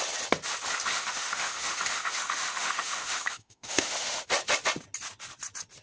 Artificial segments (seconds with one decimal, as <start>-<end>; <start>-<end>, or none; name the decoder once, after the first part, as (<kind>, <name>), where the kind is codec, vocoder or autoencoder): 0.8-4.3 (autoencoder, DAC-VAE)